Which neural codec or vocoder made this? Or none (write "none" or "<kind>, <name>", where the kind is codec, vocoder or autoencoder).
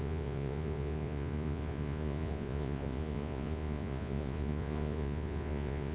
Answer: vocoder, Vocos